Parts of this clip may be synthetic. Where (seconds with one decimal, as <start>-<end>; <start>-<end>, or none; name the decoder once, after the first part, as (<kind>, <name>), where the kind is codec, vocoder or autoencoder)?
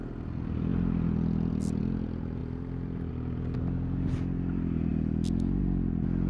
2.4-3.1 (vocoder, BigVGAN v2)